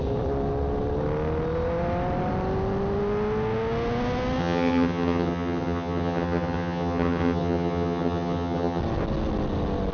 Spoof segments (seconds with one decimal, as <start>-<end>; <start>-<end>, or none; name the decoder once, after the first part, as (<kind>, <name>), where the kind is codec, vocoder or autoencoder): 4.4-8.8 (vocoder, HiFi-GAN)